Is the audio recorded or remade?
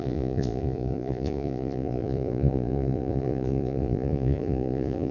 remade